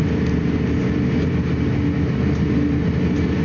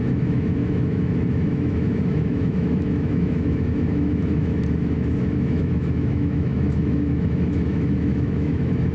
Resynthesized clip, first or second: second